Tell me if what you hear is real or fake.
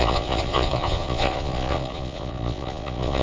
fake